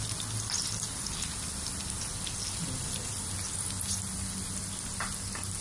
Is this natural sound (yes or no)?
yes